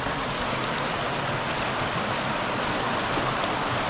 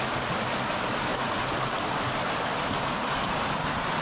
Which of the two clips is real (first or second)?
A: second